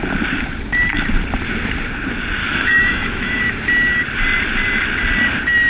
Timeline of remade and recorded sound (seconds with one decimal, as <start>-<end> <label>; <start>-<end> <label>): 0.0-2.4 recorded; 2.4-3.4 remade; 3.4-5.7 recorded